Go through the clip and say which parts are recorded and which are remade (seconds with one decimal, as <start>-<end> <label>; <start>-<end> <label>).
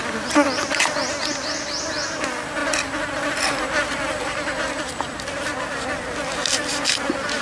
0.0-0.7 remade; 0.7-2.6 recorded; 2.6-7.0 remade; 7.0-7.4 recorded